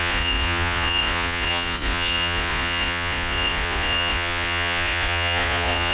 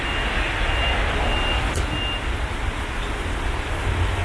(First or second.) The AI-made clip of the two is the first